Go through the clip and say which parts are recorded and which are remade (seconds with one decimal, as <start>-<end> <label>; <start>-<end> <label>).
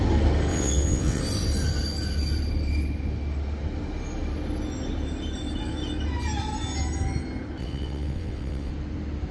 0.0-0.5 recorded; 0.5-1.2 remade; 1.2-7.6 recorded; 7.6-8.7 remade; 8.7-9.3 recorded